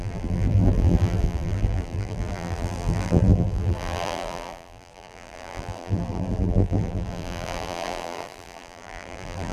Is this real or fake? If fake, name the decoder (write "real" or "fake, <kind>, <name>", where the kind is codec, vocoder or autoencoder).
fake, vocoder, BigVGAN v2